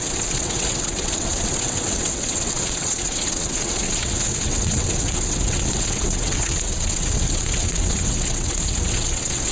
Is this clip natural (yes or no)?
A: no